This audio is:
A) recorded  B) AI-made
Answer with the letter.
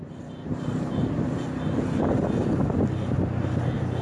A